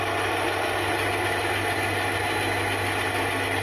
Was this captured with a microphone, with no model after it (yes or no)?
yes